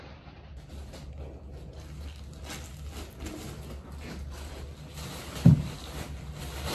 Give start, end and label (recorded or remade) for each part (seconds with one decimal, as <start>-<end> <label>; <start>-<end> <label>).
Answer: 0.0-6.7 recorded

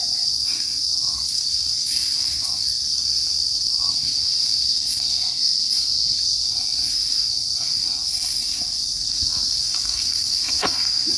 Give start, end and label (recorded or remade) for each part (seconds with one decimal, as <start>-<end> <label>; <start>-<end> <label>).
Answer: 0.0-11.2 remade